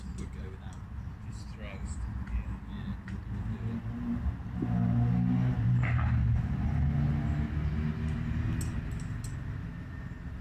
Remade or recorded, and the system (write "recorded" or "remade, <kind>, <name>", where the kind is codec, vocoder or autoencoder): recorded